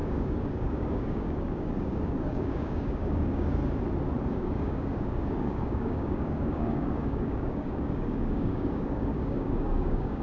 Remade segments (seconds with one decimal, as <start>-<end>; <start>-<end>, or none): 0.0-3.6; 4.3-10.2